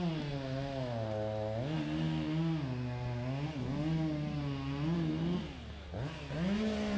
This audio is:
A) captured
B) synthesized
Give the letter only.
A